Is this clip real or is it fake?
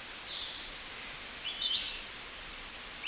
real